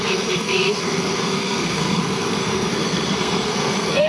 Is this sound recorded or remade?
remade